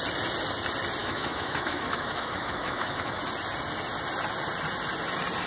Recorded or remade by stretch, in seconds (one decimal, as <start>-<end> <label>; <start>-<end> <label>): 0.0-1.0 recorded; 1.0-3.2 remade; 3.2-5.5 recorded